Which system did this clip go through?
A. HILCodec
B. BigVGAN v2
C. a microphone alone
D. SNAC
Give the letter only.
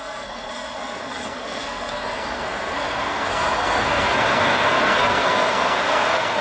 D